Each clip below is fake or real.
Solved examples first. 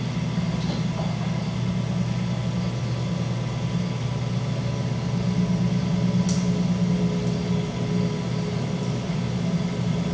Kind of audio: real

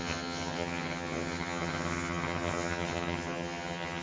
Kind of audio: fake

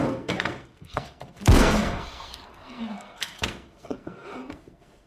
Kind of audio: fake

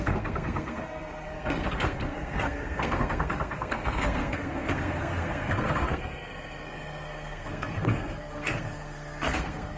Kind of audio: fake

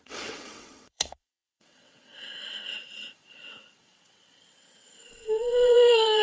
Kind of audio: fake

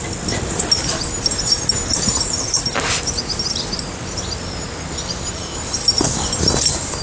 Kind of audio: real